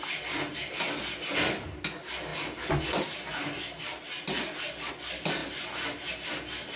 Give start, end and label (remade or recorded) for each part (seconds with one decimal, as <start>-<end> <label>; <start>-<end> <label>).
0.0-6.8 recorded